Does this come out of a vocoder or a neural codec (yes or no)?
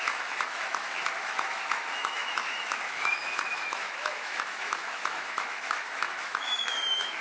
yes